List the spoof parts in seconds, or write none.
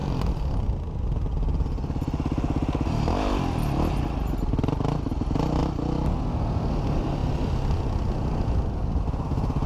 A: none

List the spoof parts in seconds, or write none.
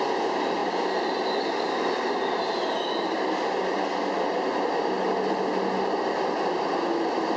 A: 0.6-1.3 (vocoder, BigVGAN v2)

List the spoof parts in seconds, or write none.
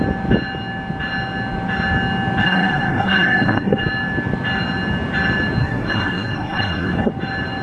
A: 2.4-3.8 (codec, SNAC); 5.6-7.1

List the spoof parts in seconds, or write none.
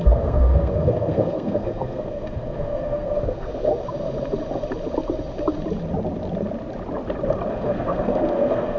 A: 0.0-3.7 (codec, SNAC); 7.5-8.8